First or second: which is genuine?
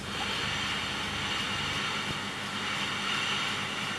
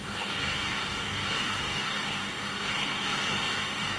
first